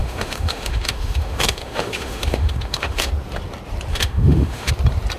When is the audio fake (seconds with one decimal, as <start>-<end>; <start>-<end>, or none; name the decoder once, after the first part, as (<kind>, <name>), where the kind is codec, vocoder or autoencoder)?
0.0-3.1 (autoencoder, DAC-VAE); 3.9-4.7